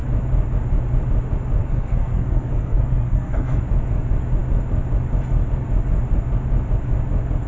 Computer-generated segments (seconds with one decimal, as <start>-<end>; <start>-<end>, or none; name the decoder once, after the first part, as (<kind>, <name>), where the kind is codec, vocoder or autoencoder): 1.6-3.6 (codec, SNAC)